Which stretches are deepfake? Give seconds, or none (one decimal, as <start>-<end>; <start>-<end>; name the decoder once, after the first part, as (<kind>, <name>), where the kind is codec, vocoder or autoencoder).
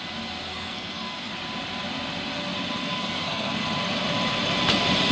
0.5-1.3 (codec, SNAC); 2.8-3.5